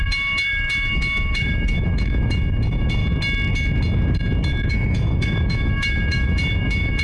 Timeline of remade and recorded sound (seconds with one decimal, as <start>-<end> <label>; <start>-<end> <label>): 0.0-3.0 remade; 3.0-4.7 recorded; 4.7-7.0 remade

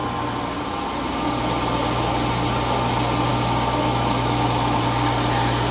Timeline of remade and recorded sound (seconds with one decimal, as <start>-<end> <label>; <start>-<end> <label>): 0.0-3.3 recorded; 3.3-4.8 remade; 4.8-5.7 recorded

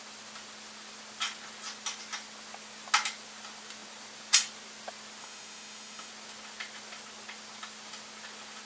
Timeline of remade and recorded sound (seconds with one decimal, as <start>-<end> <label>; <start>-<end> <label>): 0.0-5.2 recorded; 5.2-6.1 remade; 6.1-8.7 recorded

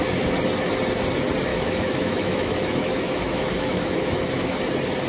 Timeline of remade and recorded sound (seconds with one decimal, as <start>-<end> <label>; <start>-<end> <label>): 0.0-1.5 recorded; 1.5-4.6 remade; 4.6-5.1 recorded

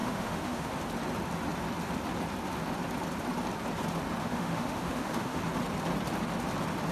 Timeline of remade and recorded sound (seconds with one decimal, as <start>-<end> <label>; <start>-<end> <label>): 0.0-0.7 remade; 0.7-4.2 recorded; 4.2-5.4 remade; 5.4-6.9 recorded

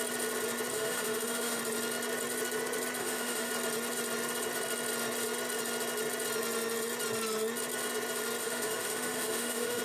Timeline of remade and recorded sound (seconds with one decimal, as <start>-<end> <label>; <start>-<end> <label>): 0.0-0.7 recorded; 0.7-1.6 remade; 1.6-3.0 recorded; 3.0-3.5 remade; 3.5-8.4 recorded; 8.4-9.8 remade

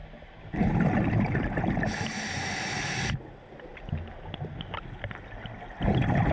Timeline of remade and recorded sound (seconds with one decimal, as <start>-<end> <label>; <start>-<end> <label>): 0.0-6.3 recorded